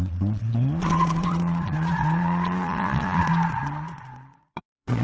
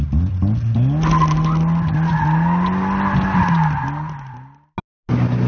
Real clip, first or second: second